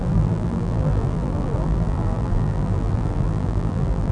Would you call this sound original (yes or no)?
no